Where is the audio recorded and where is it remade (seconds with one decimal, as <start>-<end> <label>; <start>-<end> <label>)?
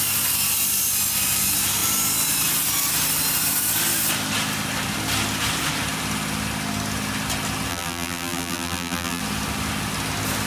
0.0-7.7 recorded; 7.7-9.2 remade; 9.2-10.5 recorded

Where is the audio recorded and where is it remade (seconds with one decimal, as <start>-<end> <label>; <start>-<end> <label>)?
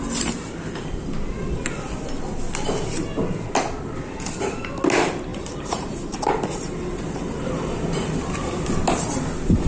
0.0-5.3 recorded; 5.3-8.2 remade; 8.2-9.7 recorded